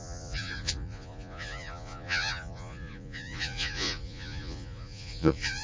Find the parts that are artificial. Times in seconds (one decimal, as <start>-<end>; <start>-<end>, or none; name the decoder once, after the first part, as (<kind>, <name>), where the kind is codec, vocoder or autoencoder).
0.0-5.6 (vocoder, Vocos)